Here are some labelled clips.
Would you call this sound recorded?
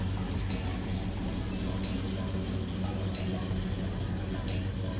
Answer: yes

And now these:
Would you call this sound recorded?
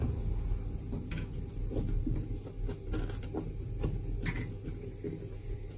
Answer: yes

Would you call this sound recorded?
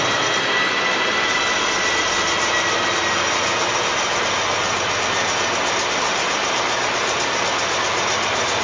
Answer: yes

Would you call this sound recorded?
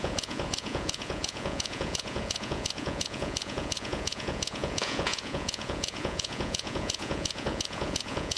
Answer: no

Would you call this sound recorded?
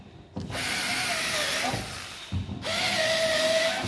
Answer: yes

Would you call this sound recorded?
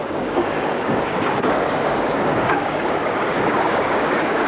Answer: no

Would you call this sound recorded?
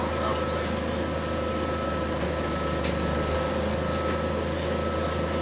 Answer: yes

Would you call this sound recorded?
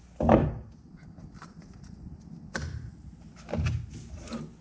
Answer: yes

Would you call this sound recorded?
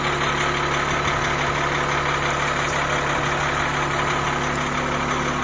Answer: yes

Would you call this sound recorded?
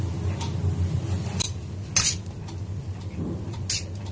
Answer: yes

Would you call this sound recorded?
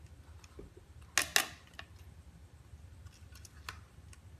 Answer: yes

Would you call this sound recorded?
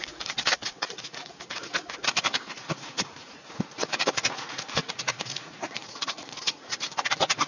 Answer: no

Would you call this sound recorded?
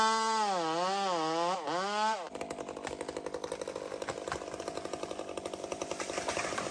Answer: yes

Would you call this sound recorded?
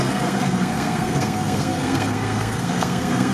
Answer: no